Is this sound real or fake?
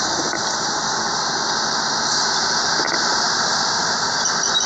fake